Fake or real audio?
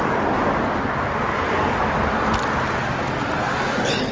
real